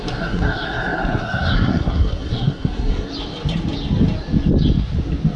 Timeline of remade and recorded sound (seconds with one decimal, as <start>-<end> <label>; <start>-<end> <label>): 0.0-3.1 remade; 3.1-5.4 recorded